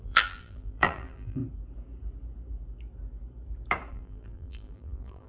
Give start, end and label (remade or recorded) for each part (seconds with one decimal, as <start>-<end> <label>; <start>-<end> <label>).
0.0-1.4 remade; 1.4-3.9 recorded; 3.9-5.3 remade